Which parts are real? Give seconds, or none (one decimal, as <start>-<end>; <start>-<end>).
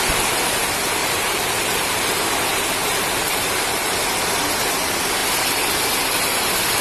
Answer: 0.0-1.0; 2.0-2.8; 4.0-6.8